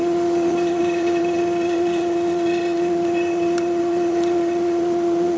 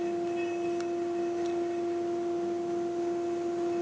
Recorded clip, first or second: second